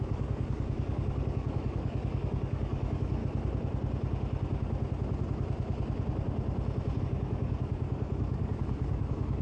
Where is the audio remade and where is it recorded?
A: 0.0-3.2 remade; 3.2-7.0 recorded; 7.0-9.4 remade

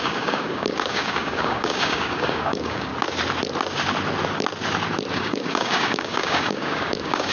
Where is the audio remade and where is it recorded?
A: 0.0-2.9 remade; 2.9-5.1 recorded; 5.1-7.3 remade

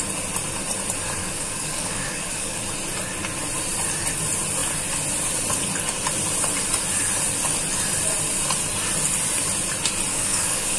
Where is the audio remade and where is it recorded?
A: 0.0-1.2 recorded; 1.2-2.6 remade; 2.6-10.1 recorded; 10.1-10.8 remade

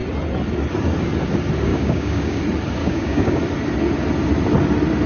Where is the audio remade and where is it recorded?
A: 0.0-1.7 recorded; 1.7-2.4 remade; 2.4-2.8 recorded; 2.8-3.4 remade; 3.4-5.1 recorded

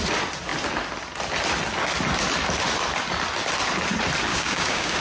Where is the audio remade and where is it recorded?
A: 0.0-4.3 recorded; 4.3-5.0 remade

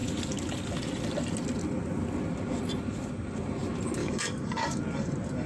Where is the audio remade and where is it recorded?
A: 0.0-4.0 recorded; 4.0-4.8 remade; 4.8-5.5 recorded